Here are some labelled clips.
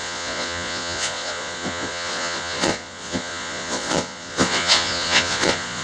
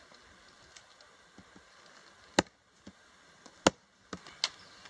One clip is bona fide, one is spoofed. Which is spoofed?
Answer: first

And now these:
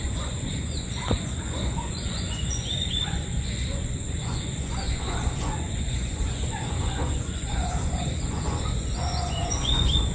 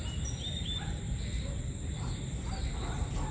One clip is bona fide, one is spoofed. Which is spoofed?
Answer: first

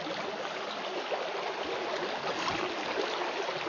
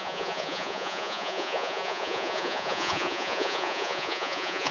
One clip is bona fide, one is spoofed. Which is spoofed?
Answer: second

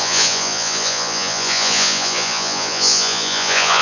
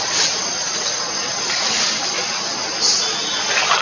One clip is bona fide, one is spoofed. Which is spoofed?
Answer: first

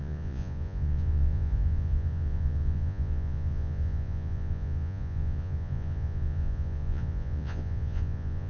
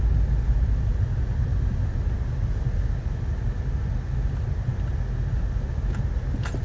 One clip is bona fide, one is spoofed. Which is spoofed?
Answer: first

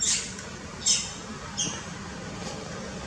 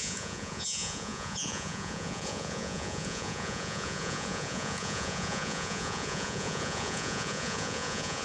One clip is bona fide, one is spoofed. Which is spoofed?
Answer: second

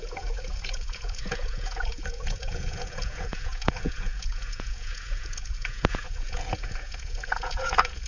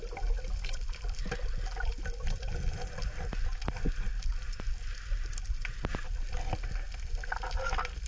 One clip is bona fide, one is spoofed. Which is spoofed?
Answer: first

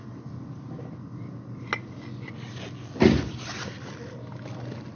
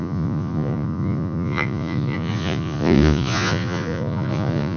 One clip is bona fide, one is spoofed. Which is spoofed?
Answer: second